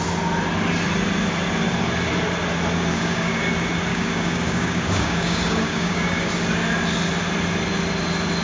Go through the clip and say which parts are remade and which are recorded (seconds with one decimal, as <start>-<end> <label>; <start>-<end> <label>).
0.0-2.9 recorded; 2.9-3.5 remade; 3.5-3.9 recorded; 3.9-6.3 remade; 6.3-8.4 recorded